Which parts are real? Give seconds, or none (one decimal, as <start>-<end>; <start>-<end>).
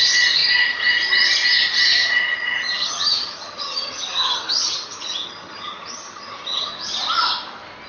0.0-2.0; 6.7-7.9